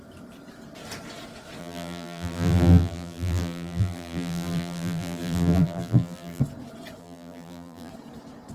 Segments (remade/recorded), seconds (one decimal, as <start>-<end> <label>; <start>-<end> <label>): 0.0-1.6 recorded; 1.6-6.4 remade; 6.4-7.0 recorded; 7.0-7.9 remade; 7.9-8.5 recorded